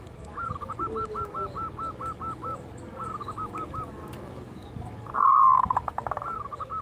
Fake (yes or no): yes